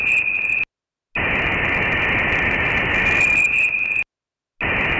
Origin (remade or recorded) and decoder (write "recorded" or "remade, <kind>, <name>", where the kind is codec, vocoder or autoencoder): recorded